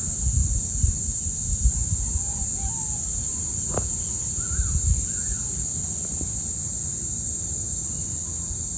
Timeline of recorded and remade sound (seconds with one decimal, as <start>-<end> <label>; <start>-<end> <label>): 0.0-8.8 recorded